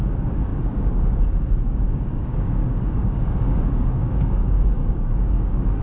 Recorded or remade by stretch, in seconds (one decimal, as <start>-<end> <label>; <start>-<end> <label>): 0.0-5.8 remade